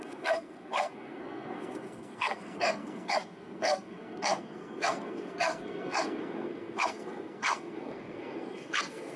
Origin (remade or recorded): remade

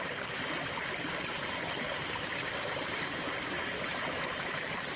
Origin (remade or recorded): recorded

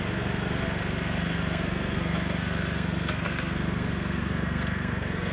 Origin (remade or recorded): remade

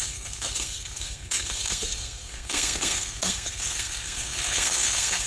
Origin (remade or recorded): remade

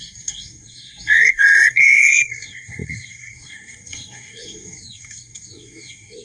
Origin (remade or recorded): remade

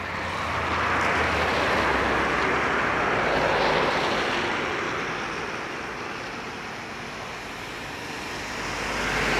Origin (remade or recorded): recorded